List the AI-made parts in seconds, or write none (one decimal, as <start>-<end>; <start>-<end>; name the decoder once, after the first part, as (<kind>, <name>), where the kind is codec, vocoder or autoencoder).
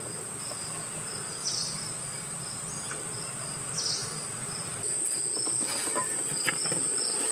1.4-2.4 (vocoder, BigVGAN v2); 4.0-4.6